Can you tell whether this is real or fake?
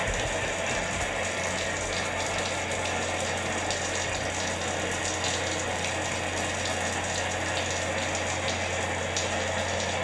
real